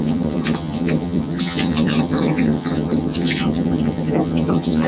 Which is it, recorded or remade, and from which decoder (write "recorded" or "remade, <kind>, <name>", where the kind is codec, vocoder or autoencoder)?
remade, vocoder, HiFi-GAN